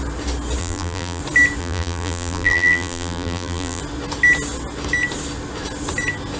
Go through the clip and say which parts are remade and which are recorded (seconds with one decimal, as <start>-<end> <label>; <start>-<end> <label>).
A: 0.0-0.6 recorded; 0.6-1.2 remade; 1.2-1.6 recorded; 1.6-3.8 remade; 3.8-6.4 recorded